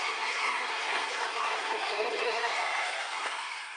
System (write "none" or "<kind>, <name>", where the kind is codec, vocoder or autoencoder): codec, SNAC